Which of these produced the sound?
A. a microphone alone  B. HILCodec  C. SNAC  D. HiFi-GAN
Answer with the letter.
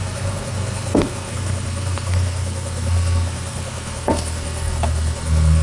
C